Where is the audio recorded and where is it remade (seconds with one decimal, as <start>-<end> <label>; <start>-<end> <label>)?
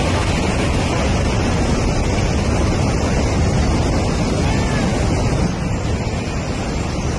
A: 0.0-7.2 recorded